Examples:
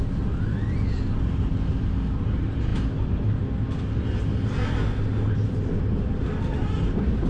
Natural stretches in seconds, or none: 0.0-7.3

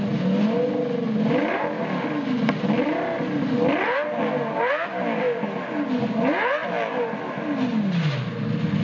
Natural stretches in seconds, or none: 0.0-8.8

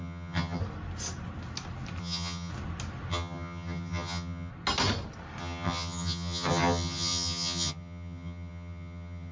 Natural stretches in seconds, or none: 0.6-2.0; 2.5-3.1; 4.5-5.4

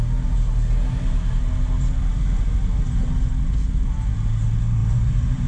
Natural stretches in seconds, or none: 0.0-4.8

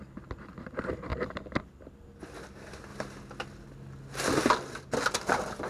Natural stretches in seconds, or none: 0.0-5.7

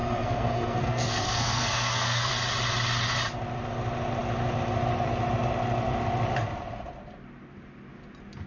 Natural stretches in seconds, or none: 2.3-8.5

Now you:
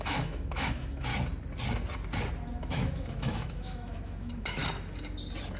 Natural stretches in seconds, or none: 1.1-2.6; 4.6-5.6

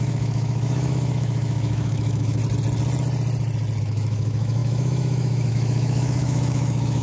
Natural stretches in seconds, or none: 2.4-3.8